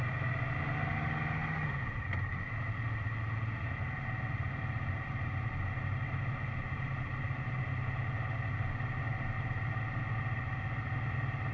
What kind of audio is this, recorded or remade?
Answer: recorded